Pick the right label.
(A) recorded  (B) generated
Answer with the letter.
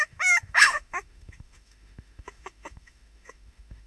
B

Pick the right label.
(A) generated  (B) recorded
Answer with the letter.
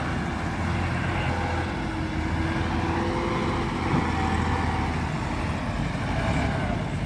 B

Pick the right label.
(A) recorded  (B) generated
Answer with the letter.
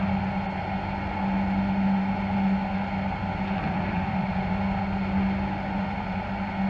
A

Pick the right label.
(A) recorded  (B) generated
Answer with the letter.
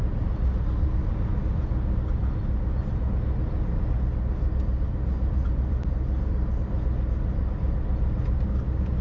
A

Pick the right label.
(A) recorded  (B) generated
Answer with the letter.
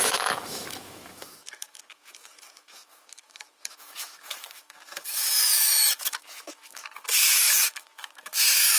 B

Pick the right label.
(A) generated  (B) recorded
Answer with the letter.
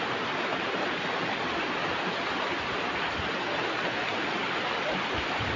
B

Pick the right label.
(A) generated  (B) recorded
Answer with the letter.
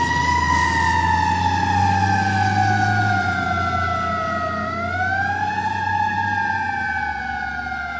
B